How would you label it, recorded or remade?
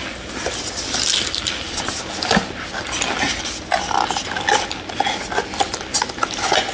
recorded